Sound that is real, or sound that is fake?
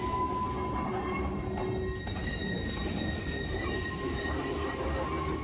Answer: real